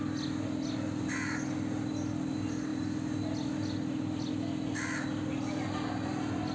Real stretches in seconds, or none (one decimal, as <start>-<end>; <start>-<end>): 0.0-6.5